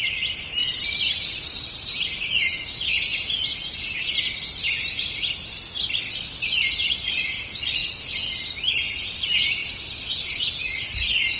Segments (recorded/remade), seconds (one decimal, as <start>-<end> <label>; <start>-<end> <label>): 0.0-11.4 recorded